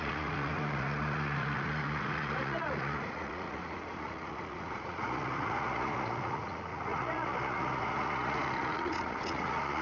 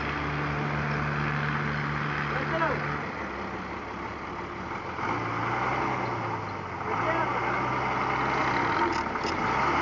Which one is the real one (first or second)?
second